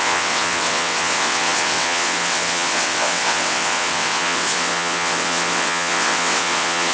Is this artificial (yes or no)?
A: yes